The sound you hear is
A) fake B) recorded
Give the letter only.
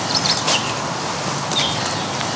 B